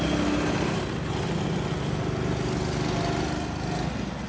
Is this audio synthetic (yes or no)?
no